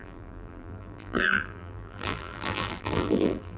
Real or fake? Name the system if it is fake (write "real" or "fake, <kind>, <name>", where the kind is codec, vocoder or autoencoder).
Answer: fake, vocoder, BigVGAN v2